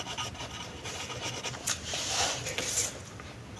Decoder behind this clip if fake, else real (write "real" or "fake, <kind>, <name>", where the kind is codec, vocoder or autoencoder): real